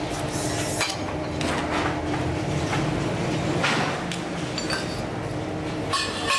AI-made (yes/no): no